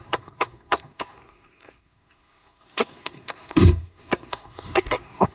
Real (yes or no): no